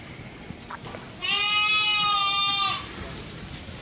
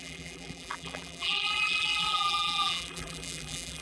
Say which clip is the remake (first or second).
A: second